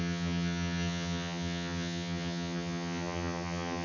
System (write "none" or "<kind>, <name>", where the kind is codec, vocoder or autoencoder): vocoder, HiFi-GAN